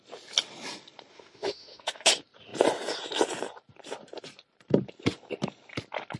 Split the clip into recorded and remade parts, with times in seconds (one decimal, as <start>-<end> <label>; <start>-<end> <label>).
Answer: 0.0-1.1 recorded; 1.1-2.1 remade; 2.1-6.2 recorded